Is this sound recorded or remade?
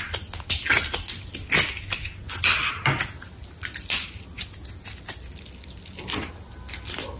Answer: recorded